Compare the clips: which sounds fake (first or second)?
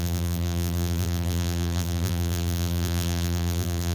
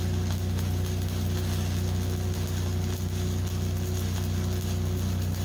first